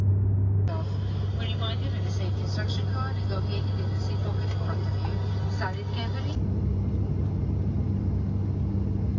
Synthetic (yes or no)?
no